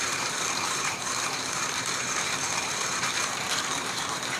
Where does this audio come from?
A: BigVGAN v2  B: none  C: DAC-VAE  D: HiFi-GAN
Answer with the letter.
A